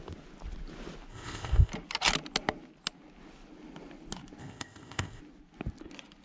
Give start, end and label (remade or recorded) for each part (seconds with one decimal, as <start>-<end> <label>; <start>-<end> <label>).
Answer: 0.0-1.1 recorded; 1.1-1.7 remade; 1.7-4.4 recorded; 4.4-5.2 remade; 5.2-6.2 recorded